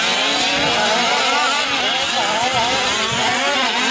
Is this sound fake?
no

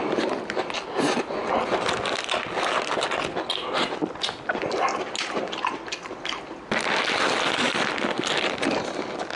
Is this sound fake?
no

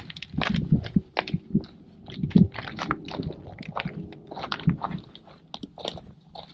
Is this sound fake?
no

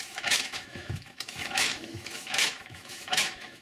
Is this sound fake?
yes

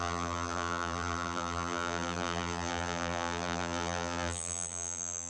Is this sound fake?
yes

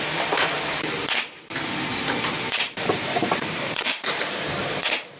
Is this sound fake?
yes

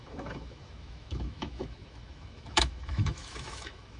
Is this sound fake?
yes